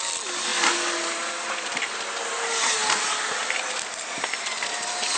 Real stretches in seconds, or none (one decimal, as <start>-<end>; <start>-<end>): 0.0-5.2